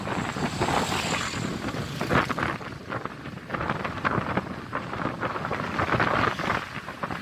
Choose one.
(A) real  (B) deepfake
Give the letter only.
A